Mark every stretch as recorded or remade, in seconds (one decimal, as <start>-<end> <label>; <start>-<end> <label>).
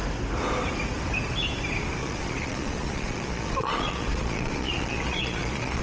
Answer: 0.0-2.0 recorded; 2.0-5.8 remade